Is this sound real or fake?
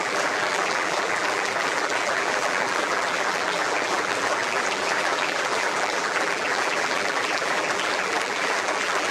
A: fake